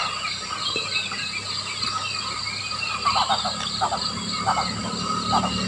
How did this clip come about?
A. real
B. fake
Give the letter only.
A